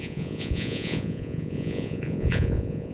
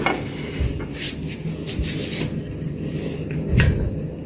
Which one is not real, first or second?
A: first